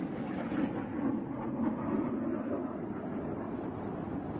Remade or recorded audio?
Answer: recorded